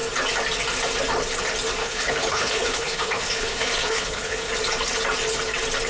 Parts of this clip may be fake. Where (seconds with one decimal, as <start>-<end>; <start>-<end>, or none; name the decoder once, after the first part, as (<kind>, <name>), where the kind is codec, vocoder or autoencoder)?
1.8-4.5 (codec, HILCodec)